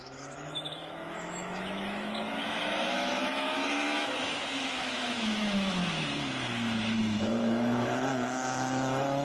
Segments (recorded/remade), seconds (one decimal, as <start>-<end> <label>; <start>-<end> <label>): 0.0-5.8 remade; 5.8-7.0 recorded; 7.0-9.2 remade